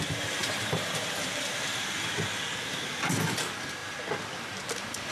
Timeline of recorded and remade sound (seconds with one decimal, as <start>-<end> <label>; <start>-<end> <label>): 0.0-0.4 recorded; 0.4-1.4 remade; 1.4-5.1 recorded